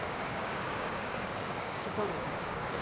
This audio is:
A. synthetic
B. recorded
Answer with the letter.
A